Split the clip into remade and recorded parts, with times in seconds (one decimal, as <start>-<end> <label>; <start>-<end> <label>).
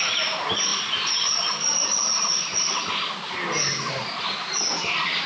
0.0-5.3 recorded